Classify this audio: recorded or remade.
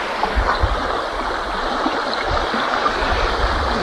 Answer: recorded